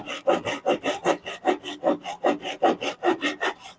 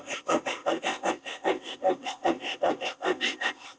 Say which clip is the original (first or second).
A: first